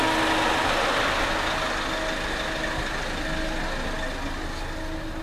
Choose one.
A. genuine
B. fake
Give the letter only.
A